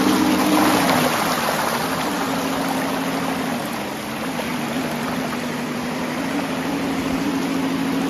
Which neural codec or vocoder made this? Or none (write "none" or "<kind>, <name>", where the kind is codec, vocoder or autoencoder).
none